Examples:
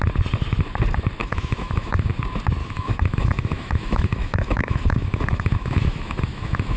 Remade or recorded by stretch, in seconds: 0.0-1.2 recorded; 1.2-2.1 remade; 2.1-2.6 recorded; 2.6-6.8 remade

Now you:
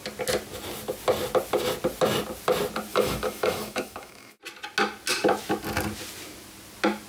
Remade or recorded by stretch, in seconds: 0.0-2.9 recorded; 2.9-4.4 remade; 4.4-7.1 recorded

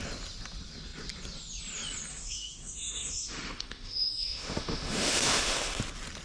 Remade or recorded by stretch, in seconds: 0.0-2.1 recorded; 2.1-5.8 remade; 5.8-6.2 recorded